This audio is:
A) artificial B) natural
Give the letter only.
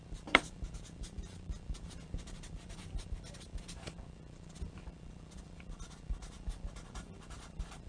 A